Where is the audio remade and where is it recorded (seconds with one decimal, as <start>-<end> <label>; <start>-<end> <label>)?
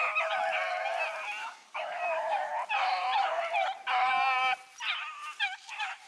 0.0-1.4 recorded; 1.4-2.5 remade; 2.5-6.1 recorded